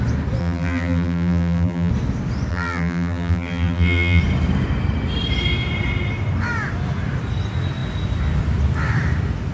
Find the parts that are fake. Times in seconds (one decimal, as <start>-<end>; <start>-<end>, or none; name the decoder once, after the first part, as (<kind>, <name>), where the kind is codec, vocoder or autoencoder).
0.4-1.9 (vocoder, BigVGAN v2); 2.5-4.2